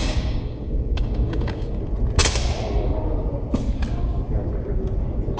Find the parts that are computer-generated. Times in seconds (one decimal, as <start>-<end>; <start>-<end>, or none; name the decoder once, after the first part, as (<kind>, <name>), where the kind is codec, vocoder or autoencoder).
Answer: 0.0-1.8 (codec, DAC)